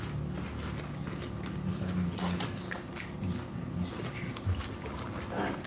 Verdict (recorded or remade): recorded